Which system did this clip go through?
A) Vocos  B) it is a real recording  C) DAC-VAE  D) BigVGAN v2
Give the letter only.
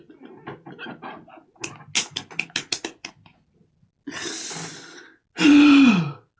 B